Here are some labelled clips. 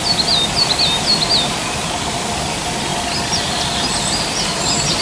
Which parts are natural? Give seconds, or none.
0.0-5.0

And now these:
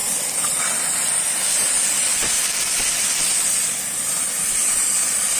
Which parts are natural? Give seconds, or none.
0.0-5.4

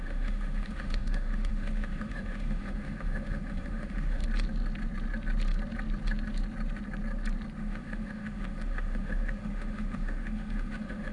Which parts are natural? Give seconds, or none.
4.2-7.6

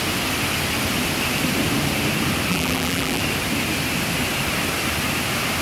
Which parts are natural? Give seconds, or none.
0.0-2.5; 3.2-5.6

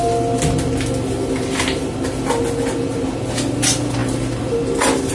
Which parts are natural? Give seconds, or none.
0.0-5.1